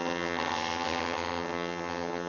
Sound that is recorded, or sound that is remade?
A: remade